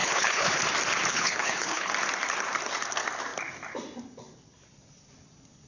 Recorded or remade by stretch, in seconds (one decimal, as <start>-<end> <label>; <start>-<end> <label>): 0.0-0.6 remade; 0.6-1.1 recorded; 1.1-1.9 remade; 1.9-5.7 recorded

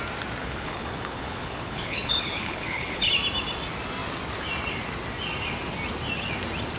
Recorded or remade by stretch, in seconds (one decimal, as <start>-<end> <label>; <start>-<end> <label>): 0.0-0.4 recorded; 0.4-3.1 remade; 3.1-6.8 recorded

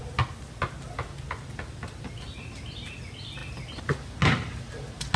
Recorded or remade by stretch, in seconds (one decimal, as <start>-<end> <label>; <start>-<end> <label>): 0.0-5.2 recorded

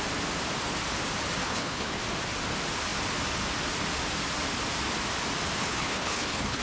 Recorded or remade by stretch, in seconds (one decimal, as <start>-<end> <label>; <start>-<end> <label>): 0.0-1.4 recorded; 1.4-2.0 remade; 2.0-5.6 recorded; 5.6-6.6 remade